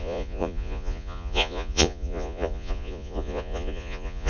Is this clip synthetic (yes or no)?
yes